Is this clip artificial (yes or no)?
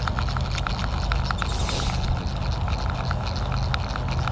no